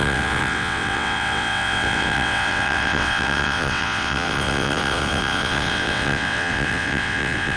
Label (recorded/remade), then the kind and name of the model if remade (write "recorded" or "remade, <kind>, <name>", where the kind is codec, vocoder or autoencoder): remade, vocoder, WaveNeXt